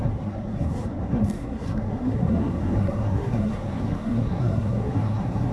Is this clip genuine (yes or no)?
no